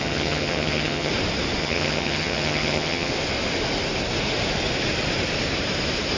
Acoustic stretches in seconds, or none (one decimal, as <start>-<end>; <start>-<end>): 1.1-1.6; 3.1-6.2

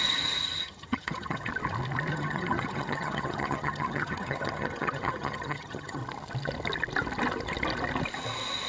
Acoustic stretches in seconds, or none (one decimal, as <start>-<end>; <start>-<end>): 1.5-2.1; 6.0-8.7

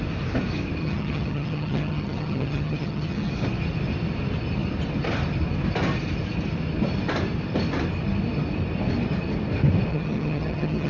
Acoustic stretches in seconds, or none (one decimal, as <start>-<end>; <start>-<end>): 0.0-0.8; 3.3-9.9

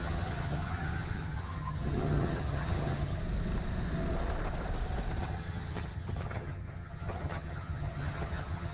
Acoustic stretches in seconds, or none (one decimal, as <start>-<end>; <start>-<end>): 3.2-5.2

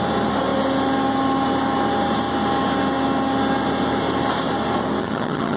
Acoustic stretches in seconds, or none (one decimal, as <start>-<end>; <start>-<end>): 0.0-5.0